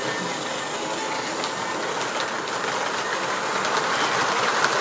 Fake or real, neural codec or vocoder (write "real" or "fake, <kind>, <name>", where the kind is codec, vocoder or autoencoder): real